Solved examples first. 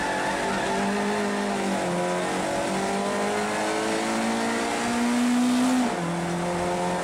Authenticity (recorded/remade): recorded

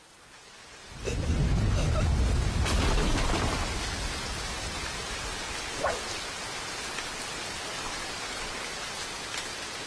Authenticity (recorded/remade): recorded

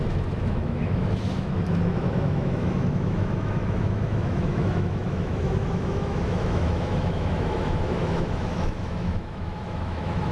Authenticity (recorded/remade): remade